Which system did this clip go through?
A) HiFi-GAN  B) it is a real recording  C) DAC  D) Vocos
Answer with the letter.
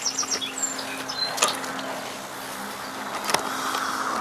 B